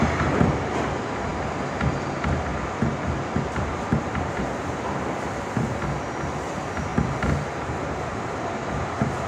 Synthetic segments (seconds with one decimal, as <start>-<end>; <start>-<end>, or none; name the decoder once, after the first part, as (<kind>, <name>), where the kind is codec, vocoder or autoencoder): none